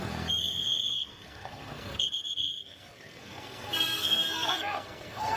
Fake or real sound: fake